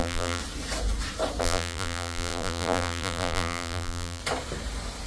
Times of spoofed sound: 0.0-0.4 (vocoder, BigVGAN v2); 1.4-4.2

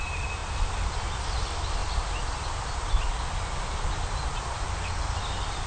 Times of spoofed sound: none

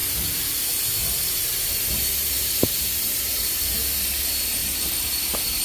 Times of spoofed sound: 0.0-0.6 (vocoder, BigVGAN v2); 1.0-4.0; 4.6-5.6

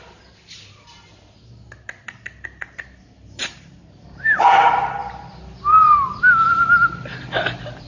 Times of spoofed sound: 3.4-4.4 (vocoder, BigVGAN v2)

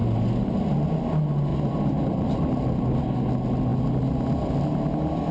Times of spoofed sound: 1.5-3.0 (vocoder, BigVGAN v2)

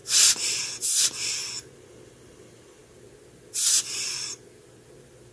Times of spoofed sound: none